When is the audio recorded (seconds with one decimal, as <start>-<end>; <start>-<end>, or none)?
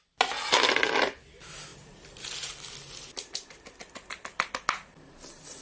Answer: 0.0-5.6